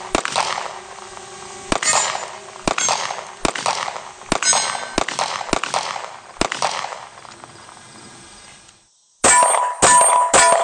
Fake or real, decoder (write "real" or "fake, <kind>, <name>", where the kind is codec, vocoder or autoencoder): real